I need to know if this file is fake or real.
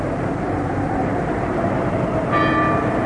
real